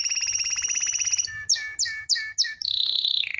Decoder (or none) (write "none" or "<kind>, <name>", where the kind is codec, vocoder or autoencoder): none